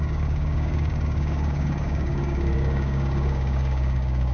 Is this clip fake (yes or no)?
yes